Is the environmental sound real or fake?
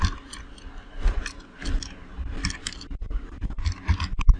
real